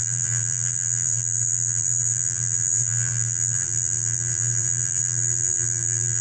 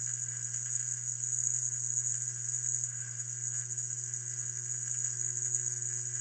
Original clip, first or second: second